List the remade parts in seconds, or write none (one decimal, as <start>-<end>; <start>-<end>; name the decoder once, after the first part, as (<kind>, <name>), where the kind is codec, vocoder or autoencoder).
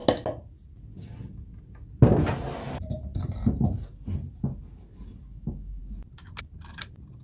5.3-5.8 (autoencoder, DAC-VAE)